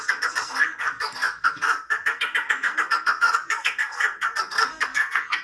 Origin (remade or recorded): remade